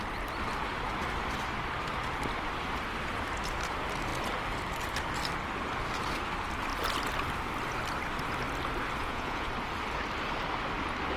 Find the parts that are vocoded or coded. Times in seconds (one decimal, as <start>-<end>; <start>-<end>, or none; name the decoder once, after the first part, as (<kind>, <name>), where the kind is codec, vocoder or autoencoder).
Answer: 9.0-9.5 (vocoder, Vocos)